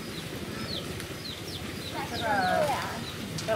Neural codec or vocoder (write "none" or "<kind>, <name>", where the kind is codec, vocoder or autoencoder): none